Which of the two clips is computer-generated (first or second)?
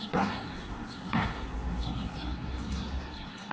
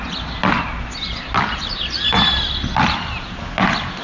first